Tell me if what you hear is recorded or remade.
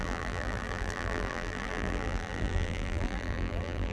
remade